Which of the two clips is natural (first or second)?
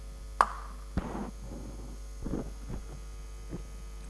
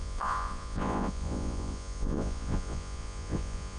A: first